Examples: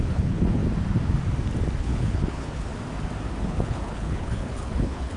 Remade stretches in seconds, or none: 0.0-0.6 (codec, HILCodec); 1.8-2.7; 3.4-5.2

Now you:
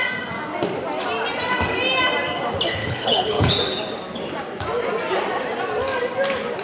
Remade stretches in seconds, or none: 2.8-3.5 (codec, HILCodec)

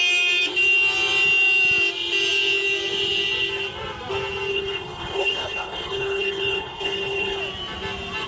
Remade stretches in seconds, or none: 4.5-7.4 (codec, HILCodec)